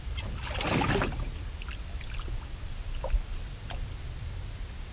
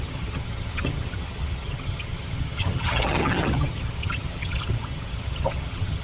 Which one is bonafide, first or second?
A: first